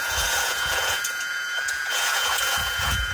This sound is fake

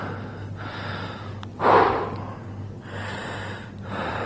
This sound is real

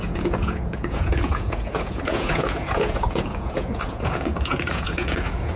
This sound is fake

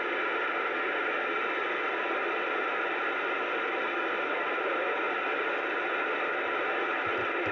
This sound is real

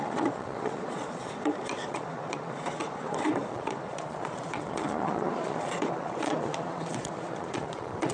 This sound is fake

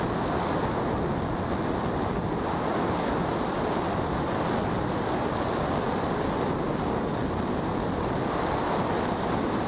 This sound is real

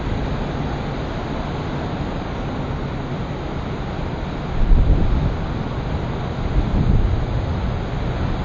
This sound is real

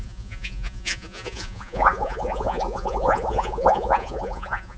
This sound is fake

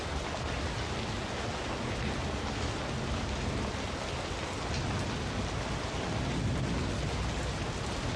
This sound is real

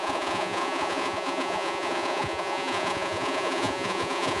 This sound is fake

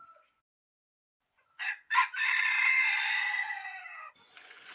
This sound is fake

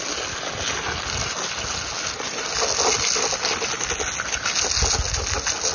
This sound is real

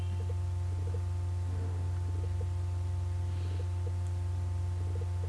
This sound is real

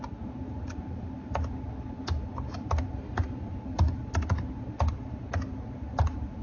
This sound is real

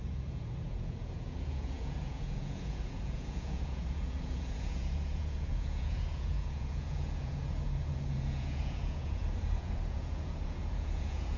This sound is fake